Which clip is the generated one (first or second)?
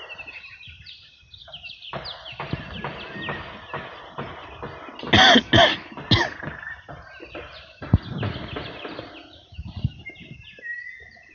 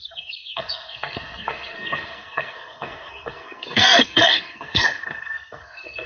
second